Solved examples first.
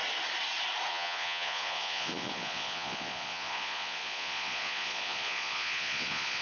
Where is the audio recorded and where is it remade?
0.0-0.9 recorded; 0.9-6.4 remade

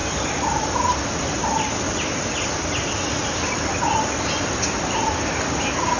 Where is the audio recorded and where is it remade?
0.0-6.0 recorded

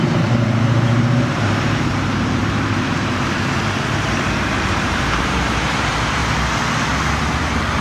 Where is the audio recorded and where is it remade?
0.0-6.2 remade; 6.2-7.8 recorded

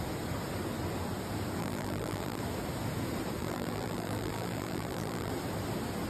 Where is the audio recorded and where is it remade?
0.0-1.6 recorded; 1.6-2.4 remade; 2.4-3.4 recorded; 3.4-5.3 remade; 5.3-6.1 recorded

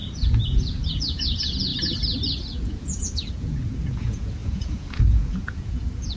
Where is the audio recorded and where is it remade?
0.0-1.7 remade; 1.7-2.5 recorded; 2.5-6.2 remade

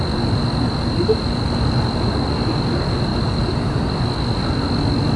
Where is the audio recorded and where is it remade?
0.0-5.2 recorded

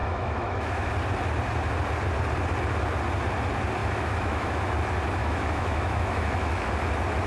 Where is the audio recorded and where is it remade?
0.0-0.9 remade; 0.9-3.8 recorded; 3.8-4.6 remade; 4.6-5.2 recorded; 5.2-6.7 remade; 6.7-7.3 recorded